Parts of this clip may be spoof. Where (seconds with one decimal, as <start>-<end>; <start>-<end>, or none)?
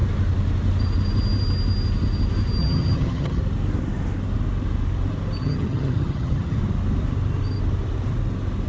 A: 2.6-3.4; 5.4-6.6